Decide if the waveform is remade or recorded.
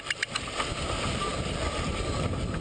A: remade